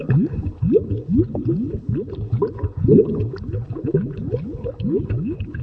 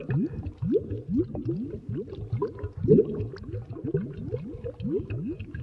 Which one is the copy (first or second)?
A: first